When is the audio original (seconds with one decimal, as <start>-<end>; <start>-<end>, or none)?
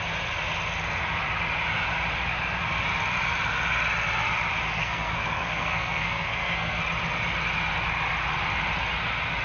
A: 0.0-4.8; 6.8-9.4